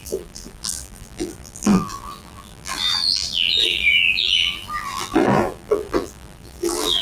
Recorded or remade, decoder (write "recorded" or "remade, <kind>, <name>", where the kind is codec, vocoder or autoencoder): remade, vocoder, BigVGAN v2